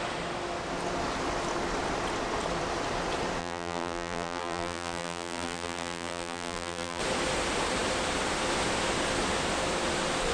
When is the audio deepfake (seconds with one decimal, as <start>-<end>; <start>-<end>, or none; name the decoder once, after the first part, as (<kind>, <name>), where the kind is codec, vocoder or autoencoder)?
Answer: 3.4-7.0 (vocoder, BigVGAN v2)